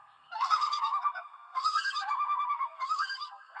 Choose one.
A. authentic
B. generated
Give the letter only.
B